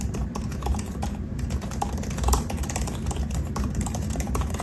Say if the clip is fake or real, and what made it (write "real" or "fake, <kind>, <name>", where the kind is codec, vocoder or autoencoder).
fake, vocoder, BigVGAN v2